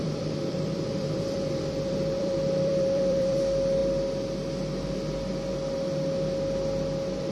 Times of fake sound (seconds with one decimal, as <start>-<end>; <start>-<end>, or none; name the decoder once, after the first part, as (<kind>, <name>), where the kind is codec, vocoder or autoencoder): 0.0-3.4 (vocoder, BigVGAN v2)